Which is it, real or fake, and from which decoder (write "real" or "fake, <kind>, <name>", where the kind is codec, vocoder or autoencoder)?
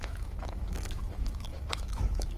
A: fake, autoencoder, DAC-VAE